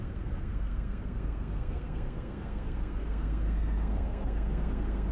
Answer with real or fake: fake